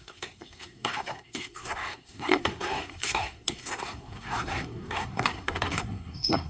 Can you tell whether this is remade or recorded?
remade